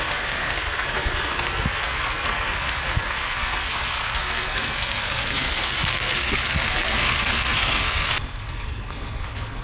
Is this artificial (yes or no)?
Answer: yes